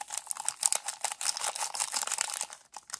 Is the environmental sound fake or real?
real